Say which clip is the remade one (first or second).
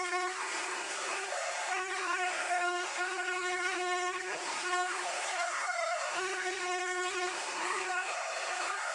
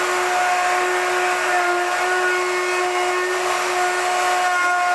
first